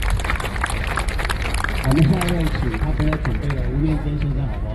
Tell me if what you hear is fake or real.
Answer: real